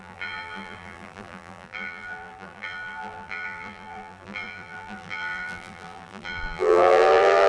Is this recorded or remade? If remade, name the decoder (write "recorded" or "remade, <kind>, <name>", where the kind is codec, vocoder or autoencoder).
remade, vocoder, BigVGAN v2